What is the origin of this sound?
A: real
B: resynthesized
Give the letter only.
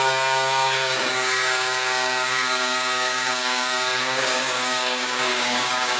B